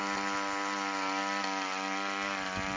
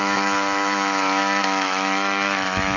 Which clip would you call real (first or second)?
first